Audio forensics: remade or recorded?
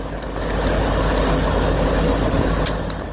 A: recorded